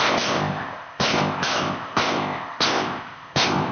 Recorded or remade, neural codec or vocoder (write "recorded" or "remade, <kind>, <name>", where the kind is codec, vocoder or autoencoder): remade, codec, ZipCodec